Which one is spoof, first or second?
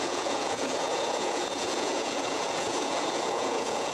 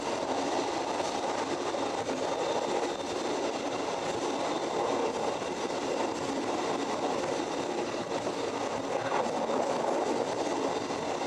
first